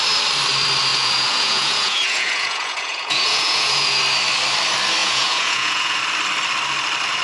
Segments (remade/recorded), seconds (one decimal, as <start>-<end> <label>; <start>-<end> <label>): 0.0-0.9 recorded; 0.9-4.0 remade; 4.0-5.0 recorded; 5.0-6.0 remade; 6.0-7.2 recorded